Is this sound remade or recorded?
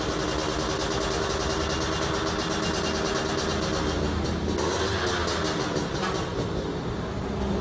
recorded